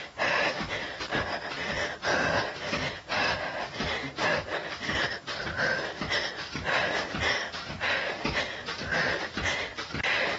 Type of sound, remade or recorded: recorded